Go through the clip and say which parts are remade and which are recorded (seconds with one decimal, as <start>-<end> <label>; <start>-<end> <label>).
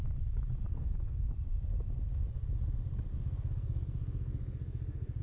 0.0-0.7 recorded; 0.7-1.3 remade; 1.3-3.1 recorded; 3.1-5.2 remade